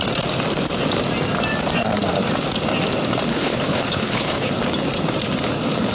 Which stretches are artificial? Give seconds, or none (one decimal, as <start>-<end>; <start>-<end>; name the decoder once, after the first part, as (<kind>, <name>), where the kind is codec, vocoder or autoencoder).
3.3-4.5 (codec, HILCodec)